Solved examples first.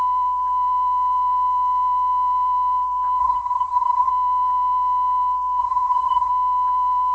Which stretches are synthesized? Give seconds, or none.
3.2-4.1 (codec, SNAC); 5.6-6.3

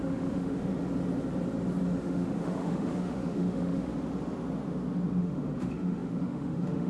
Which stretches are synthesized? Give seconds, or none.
0.0-0.7 (autoencoder, DAC-VAE); 2.0-3.9; 5.2-6.9

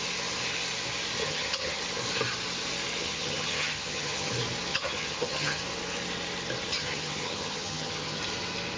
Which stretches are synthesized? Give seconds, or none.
1.2-1.8 (vocoder, HiFi-GAN); 3.0-4.3; 4.7-5.6; 6.7-8.2

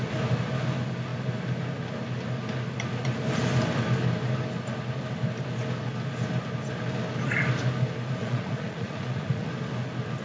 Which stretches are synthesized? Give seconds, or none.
8.2-9.5 (vocoder, Vocos)

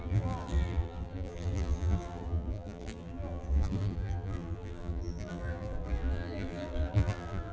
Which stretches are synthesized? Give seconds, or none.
0.0-7.5 (vocoder, BigVGAN v2)

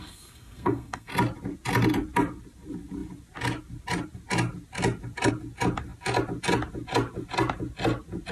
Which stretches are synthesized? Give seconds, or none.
0.0-1.1 (codec, SNAC)

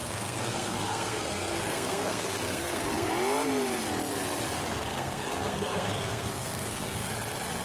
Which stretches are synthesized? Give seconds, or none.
0.0-3.1 (codec, SNAC); 4.9-7.1

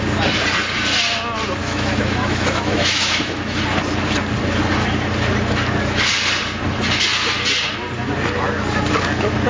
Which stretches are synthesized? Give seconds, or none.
1.6-3.6 (autoencoder, DAC-VAE)